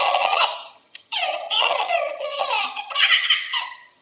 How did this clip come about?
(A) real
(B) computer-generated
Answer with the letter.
B